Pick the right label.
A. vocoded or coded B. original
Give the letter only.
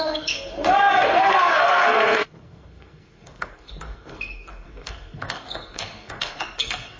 A